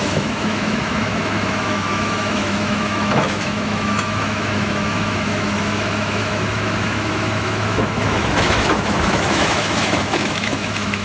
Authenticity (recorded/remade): remade